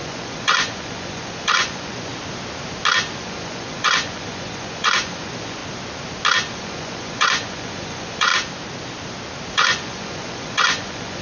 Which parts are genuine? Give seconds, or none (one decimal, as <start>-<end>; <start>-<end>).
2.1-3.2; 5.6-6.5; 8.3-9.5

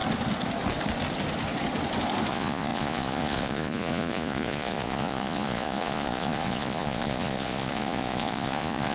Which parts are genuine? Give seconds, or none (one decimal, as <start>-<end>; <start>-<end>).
0.0-2.3

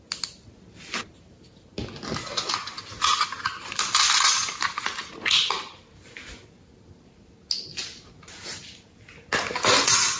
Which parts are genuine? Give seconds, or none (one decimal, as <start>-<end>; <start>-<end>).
0.0-10.2

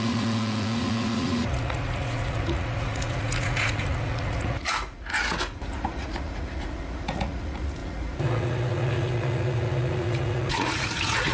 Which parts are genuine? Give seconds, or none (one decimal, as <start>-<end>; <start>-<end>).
none

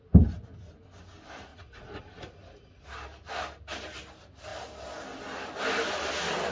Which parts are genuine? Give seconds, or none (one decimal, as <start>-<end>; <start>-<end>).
0.0-1.5; 2.0-6.5